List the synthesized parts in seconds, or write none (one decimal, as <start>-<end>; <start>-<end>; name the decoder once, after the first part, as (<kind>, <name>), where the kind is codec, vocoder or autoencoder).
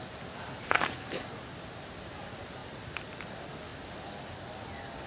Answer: none